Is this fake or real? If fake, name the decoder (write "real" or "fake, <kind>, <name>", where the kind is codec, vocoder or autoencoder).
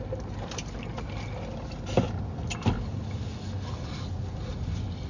real